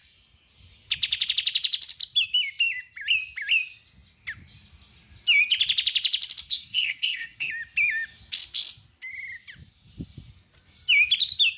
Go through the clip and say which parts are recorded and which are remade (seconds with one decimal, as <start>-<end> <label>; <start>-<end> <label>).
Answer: 0.0-6.5 recorded; 6.5-7.5 remade; 7.5-11.6 recorded